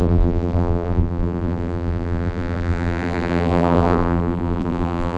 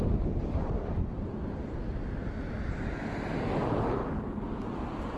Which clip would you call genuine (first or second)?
second